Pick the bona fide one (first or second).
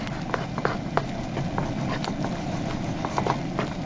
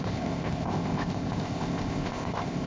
first